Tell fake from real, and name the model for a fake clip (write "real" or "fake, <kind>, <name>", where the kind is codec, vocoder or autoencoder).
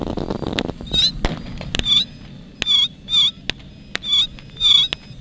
real